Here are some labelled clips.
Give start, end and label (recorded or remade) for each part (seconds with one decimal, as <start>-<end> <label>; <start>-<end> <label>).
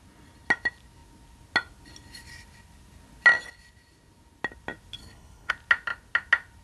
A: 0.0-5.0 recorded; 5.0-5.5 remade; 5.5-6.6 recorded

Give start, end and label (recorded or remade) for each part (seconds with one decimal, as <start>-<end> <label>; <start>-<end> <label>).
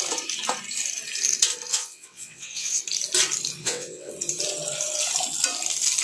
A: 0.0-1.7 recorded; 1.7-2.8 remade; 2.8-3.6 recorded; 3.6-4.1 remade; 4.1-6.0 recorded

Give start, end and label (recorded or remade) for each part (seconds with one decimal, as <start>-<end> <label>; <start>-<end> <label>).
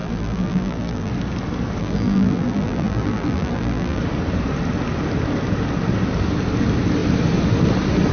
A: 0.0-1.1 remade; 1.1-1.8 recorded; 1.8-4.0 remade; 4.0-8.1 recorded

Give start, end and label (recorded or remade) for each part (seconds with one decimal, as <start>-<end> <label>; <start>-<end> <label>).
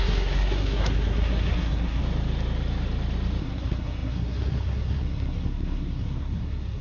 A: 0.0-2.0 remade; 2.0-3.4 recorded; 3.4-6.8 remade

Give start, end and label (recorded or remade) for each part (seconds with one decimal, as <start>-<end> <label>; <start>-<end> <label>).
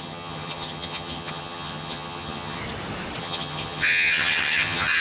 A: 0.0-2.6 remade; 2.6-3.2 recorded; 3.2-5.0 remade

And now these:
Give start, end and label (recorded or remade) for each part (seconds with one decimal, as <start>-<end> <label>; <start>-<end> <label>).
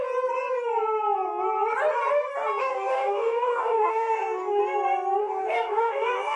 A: 0.0-2.6 recorded; 2.6-4.6 remade; 4.6-5.2 recorded; 5.2-6.4 remade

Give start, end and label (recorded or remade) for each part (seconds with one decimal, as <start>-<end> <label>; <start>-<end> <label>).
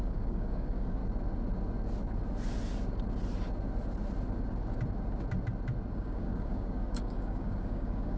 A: 0.0-1.0 remade; 1.0-5.9 recorded; 5.9-8.2 remade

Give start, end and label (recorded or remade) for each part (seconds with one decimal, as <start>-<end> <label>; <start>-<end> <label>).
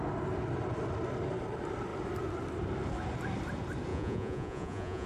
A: 0.0-3.9 recorded; 3.9-5.1 remade